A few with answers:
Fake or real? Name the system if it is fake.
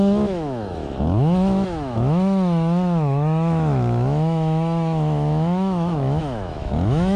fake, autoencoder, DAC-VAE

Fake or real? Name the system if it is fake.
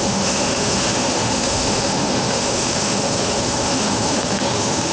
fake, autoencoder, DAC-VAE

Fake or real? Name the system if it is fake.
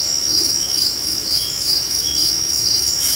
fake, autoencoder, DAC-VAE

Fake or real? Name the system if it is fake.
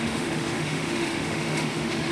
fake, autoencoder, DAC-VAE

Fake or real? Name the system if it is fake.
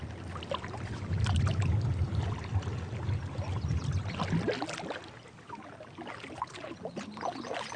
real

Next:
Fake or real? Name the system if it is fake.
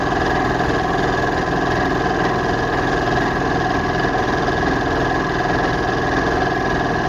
real